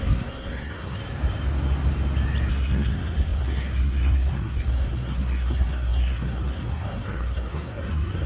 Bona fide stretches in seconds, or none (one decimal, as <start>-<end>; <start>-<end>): 1.0-2.5